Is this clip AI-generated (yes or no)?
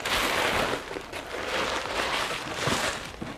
no